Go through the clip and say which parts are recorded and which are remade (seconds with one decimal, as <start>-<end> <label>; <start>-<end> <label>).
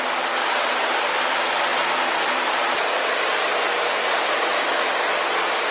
0.0-0.4 recorded; 0.4-1.0 remade; 1.0-1.7 recorded; 1.7-2.6 remade; 2.6-5.7 recorded